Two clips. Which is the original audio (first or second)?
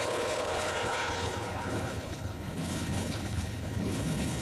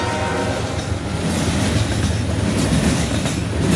second